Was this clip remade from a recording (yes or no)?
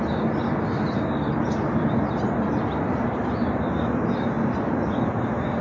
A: no